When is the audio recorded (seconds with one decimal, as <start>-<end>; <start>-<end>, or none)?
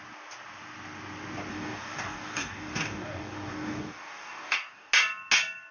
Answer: 0.0-1.5; 4.9-5.7